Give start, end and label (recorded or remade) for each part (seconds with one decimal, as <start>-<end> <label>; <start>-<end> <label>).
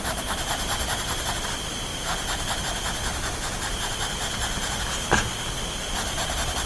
0.0-1.9 recorded; 1.9-2.6 remade; 2.6-6.7 recorded